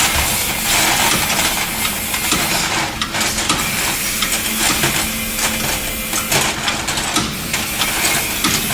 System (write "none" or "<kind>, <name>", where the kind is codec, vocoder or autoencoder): none